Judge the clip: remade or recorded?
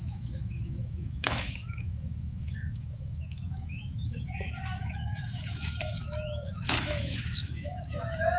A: remade